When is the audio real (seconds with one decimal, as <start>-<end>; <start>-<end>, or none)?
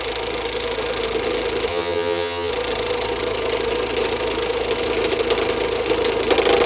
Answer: 0.0-1.7; 2.5-6.7